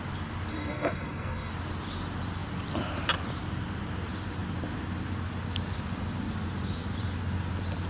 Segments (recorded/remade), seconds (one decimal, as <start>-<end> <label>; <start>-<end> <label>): 0.0-0.5 recorded; 0.5-1.5 remade; 1.5-7.9 recorded